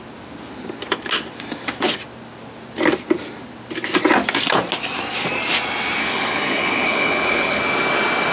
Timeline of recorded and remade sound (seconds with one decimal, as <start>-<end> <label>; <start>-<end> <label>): 0.0-6.0 recorded; 6.0-7.6 remade; 7.6-8.3 recorded